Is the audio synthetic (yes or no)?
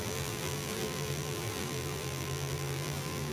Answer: yes